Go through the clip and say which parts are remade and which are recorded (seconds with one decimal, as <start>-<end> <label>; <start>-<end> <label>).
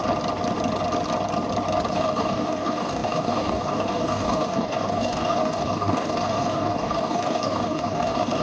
0.0-1.9 recorded; 1.9-8.4 remade